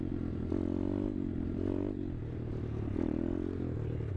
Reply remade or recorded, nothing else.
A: recorded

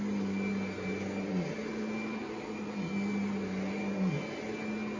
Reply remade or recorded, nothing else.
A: recorded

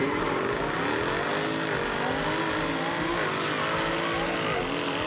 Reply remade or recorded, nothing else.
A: recorded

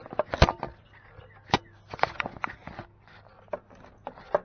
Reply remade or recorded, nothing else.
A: recorded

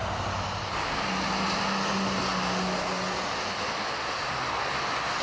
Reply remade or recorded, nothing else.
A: recorded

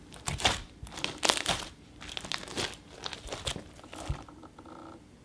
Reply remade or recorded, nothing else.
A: recorded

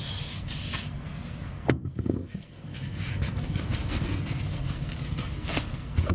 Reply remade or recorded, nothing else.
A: remade